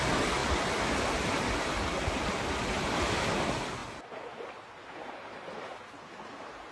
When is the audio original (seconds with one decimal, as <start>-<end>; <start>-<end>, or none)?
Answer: 0.0-6.7